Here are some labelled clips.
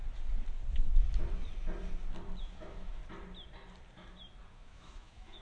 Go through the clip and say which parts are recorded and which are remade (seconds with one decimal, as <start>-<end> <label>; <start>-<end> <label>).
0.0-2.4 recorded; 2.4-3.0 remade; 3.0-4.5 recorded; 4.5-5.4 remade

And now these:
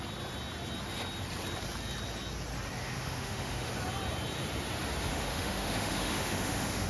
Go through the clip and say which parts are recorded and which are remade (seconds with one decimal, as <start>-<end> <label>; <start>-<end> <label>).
0.0-2.8 recorded; 2.8-3.7 remade; 3.7-5.1 recorded; 5.1-6.9 remade

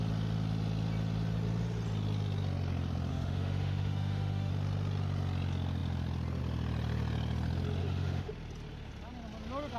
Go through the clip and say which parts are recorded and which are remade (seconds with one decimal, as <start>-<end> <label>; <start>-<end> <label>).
0.0-3.1 recorded; 3.1-4.5 remade; 4.5-7.8 recorded; 7.8-8.3 remade; 8.3-9.8 recorded